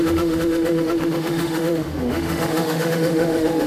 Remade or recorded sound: remade